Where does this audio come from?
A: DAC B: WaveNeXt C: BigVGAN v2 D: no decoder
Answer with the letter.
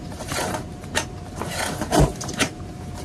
C